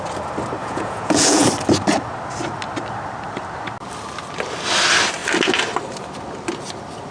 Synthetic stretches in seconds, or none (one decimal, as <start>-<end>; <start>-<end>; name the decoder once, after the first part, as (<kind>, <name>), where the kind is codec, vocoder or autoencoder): 0.6-1.5 (vocoder, Vocos)